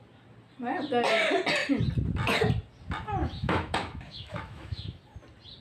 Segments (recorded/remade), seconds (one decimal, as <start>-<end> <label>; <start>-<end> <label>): 0.0-3.2 recorded; 3.2-5.0 remade; 5.0-5.6 recorded